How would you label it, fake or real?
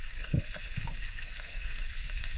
fake